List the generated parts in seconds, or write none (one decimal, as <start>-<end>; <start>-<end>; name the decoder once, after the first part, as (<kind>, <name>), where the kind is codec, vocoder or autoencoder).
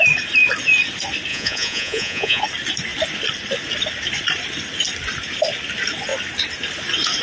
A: 1.3-2.4 (vocoder, Vocos)